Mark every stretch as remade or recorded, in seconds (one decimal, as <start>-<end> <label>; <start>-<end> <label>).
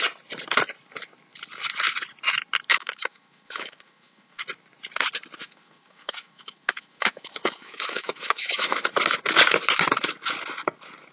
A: 0.0-2.7 recorded; 2.7-4.4 remade; 4.4-5.4 recorded; 5.4-8.9 remade; 8.9-11.1 recorded